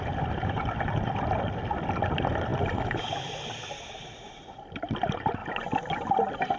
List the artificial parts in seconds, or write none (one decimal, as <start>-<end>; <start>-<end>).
0.0-5.4; 6.1-6.6